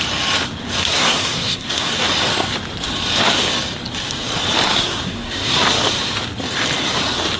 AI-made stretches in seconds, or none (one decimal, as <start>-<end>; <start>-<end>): 0.8-1.9; 4.7-5.6